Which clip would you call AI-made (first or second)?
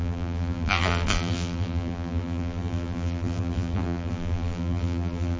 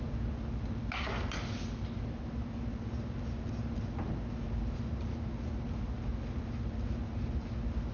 first